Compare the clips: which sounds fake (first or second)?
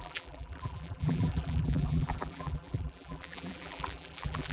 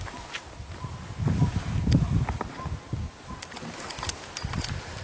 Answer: first